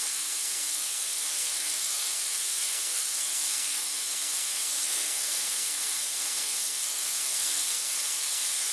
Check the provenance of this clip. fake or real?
fake